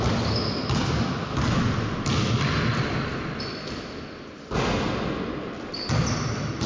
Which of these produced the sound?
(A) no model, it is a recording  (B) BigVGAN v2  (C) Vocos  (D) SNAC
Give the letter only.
A